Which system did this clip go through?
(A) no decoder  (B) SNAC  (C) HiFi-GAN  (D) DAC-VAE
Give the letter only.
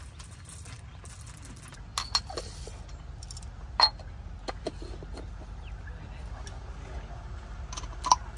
A